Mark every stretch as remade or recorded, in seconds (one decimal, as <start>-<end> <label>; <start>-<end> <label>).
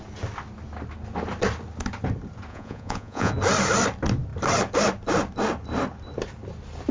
0.0-2.5 recorded; 2.5-3.3 remade; 3.3-6.9 recorded